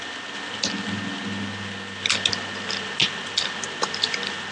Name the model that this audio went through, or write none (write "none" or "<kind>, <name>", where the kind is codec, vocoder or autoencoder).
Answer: none